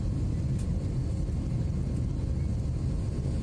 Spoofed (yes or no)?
no